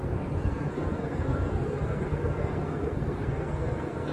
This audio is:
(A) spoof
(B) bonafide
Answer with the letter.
A